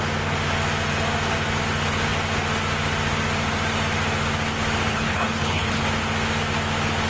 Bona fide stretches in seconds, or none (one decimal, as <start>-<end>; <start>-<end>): 0.0-4.9; 5.8-7.1